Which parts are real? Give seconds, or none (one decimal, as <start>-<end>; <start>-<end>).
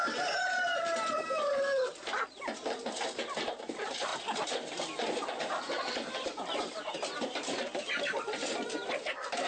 none